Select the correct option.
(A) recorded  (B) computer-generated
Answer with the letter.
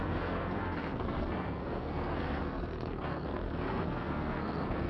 B